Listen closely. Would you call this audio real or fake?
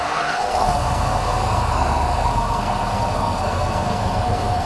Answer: fake